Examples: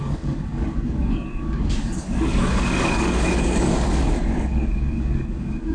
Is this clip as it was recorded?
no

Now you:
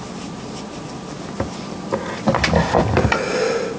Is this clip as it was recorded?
yes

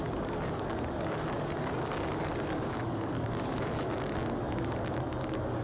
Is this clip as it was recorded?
no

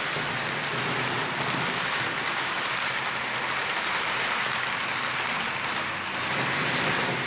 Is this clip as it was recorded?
yes